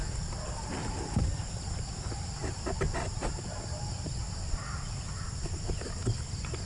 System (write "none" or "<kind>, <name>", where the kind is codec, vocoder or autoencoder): none